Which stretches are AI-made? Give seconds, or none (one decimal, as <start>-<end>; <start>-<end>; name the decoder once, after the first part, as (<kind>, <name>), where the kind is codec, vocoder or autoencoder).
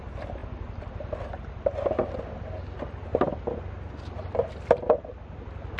0.4-2.2 (vocoder, BigVGAN v2); 3.1-3.7